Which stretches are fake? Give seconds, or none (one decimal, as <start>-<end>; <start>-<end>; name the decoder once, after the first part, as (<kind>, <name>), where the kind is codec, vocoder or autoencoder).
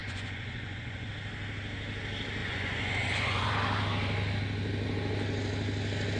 0.0-1.1 (vocoder, Vocos); 2.4-3.5